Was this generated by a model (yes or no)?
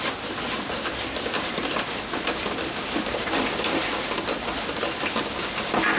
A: no